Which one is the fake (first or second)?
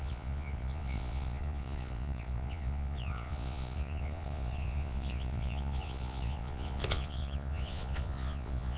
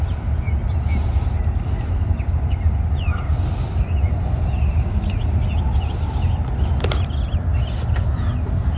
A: first